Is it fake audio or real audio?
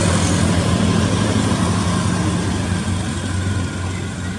real